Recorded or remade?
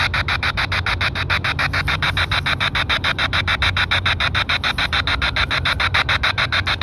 recorded